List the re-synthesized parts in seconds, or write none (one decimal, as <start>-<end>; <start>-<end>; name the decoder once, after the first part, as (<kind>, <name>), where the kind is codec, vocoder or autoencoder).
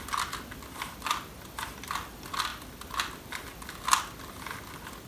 none